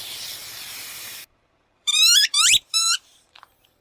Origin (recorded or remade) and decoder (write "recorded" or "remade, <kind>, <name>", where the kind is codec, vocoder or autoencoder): remade, vocoder, BigVGAN v2